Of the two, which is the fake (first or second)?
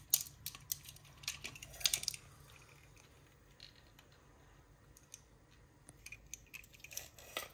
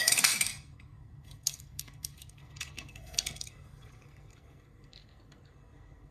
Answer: second